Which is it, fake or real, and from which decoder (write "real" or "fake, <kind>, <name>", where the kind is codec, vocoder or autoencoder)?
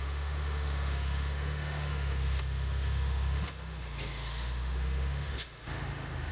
fake, autoencoder, DAC-VAE